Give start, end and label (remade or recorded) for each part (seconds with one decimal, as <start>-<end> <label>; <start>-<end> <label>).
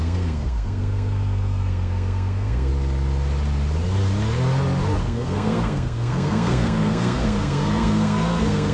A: 0.0-2.7 remade; 2.7-5.0 recorded; 5.0-8.7 remade